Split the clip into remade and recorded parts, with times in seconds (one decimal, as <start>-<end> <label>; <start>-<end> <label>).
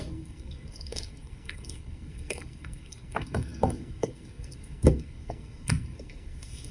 0.0-6.7 remade